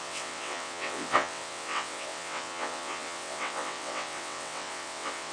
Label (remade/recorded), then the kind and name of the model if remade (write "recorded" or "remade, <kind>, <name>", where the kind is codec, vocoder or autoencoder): remade, vocoder, WaveNeXt